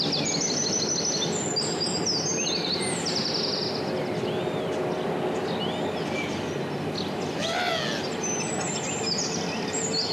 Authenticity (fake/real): real